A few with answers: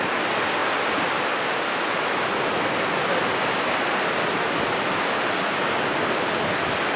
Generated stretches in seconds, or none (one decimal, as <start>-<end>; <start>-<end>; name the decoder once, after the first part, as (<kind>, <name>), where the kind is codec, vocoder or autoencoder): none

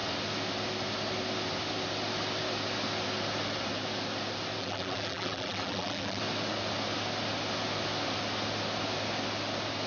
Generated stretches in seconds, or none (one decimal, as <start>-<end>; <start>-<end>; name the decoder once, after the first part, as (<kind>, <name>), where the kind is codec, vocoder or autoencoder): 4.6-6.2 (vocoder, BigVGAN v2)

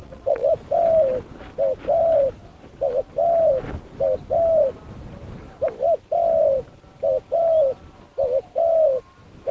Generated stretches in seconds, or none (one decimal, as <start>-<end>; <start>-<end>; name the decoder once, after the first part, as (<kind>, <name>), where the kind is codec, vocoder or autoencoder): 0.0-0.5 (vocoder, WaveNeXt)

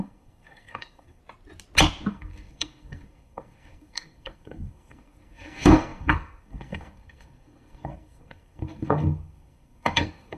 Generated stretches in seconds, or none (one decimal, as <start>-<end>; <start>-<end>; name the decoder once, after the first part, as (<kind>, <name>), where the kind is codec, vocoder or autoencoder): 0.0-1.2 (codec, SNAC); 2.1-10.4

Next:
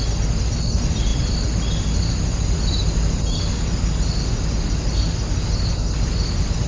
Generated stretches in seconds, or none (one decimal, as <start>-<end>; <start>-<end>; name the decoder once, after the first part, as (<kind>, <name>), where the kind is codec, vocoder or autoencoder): none

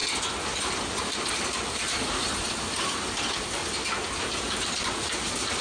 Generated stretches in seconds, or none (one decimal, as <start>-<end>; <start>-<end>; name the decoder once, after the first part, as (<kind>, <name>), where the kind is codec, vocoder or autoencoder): 1.1-3.6 (vocoder, BigVGAN v2); 4.2-5.6